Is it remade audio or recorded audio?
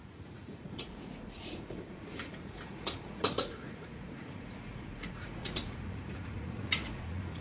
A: remade